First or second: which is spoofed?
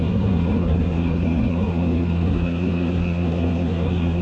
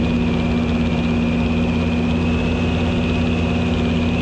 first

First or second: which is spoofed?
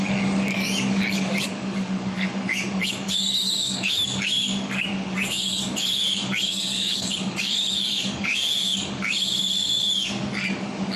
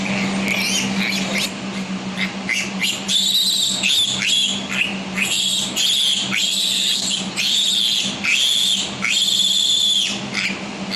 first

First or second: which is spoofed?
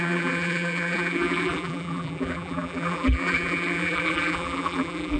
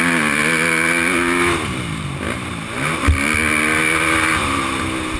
first